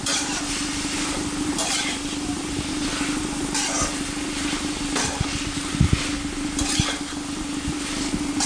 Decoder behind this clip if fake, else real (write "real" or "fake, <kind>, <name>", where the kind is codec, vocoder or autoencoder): real